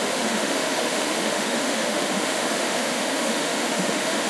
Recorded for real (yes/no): no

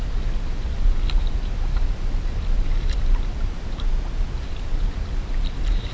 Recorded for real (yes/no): yes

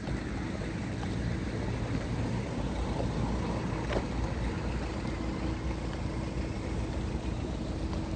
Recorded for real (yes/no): yes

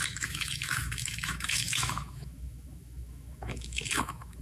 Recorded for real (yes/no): no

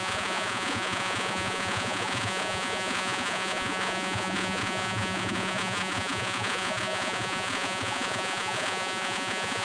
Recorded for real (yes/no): no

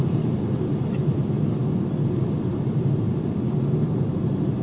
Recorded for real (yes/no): yes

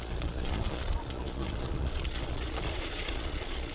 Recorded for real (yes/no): no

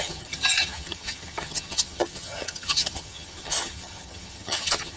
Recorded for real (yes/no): no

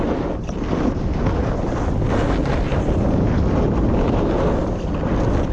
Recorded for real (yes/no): yes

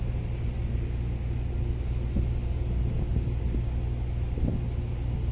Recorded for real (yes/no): yes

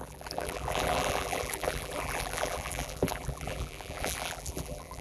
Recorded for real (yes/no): no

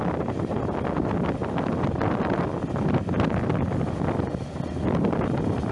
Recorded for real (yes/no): yes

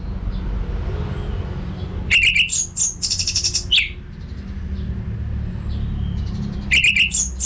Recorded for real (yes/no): yes